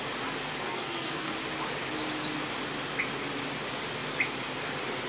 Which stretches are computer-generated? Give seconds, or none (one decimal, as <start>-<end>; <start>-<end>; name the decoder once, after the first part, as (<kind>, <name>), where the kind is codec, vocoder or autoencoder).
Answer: 0.6-1.3 (codec, SNAC)